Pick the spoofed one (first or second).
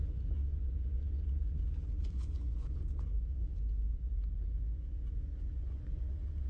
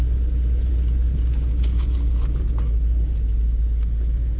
first